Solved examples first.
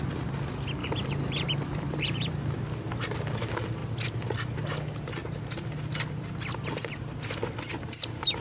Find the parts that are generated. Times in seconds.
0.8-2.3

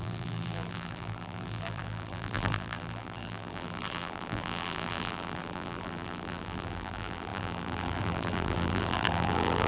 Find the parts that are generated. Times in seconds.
0.0-9.7

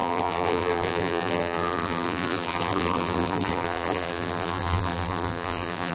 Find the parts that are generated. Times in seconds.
0.0-5.9

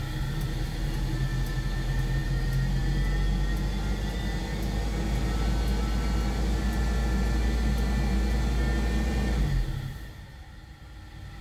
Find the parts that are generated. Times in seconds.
none

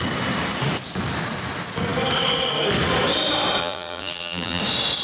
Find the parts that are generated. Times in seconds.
3.6-4.6

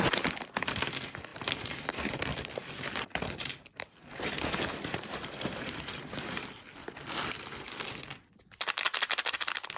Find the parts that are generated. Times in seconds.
1.3-6.4

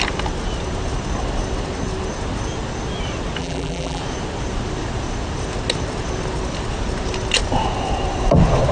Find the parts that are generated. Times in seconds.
3.4-4.0